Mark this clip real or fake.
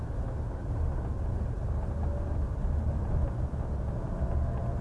real